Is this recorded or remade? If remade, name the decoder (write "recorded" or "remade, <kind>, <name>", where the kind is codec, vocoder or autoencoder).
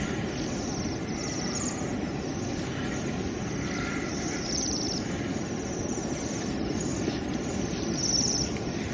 remade, vocoder, BigVGAN v2